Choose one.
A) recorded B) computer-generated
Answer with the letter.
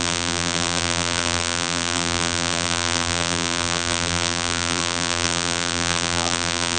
B